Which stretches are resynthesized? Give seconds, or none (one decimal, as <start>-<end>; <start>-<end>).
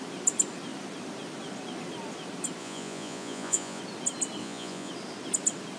2.6-3.8; 4.4-4.9